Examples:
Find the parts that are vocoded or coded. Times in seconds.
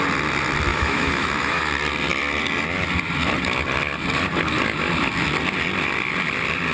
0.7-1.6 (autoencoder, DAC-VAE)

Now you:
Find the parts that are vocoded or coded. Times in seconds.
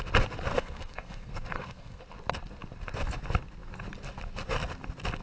0.5-2.0 (codec, SNAC)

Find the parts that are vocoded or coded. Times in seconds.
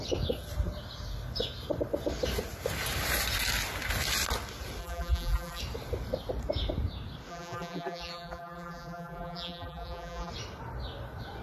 4.8-5.6 (vocoder, BigVGAN v2); 7.3-10.3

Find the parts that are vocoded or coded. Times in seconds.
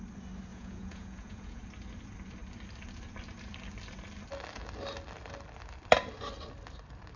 0.5-1.6 (vocoder, Vocos)